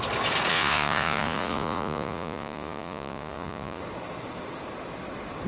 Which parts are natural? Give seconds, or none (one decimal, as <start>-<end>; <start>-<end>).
0.0-0.5; 3.8-5.5